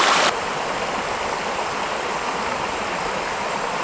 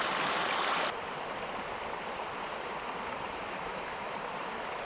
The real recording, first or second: first